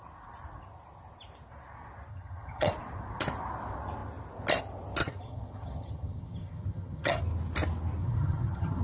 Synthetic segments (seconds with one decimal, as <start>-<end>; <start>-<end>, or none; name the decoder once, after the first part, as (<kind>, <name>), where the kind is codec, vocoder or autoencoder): 2.1-2.7 (vocoder, HiFi-GAN); 5.0-7.2; 8.0-8.8